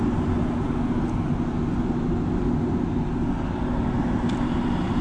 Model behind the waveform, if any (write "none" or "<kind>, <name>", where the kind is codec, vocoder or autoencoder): none